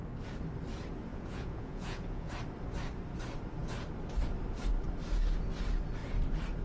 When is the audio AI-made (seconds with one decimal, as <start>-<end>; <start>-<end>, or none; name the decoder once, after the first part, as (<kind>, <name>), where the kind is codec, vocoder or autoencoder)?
1.1-2.3 (vocoder, Vocos)